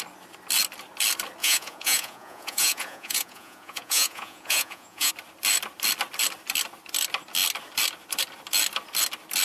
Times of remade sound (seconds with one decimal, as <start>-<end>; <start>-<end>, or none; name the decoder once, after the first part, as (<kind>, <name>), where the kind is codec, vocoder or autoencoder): 1.4-5.1 (vocoder, Vocos)